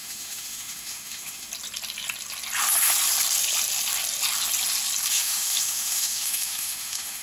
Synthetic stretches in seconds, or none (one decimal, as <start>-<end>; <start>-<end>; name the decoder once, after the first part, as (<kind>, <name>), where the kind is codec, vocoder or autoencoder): 0.0-1.5 (autoencoder, DAC-VAE); 5.1-7.2